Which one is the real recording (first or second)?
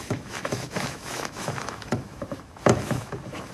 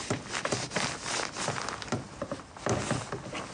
second